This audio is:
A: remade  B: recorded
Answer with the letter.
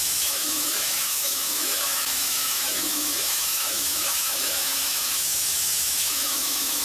A